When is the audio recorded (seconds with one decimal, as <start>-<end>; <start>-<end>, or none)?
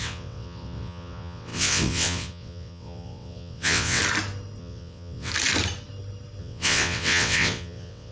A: 4.0-4.6; 5.3-6.4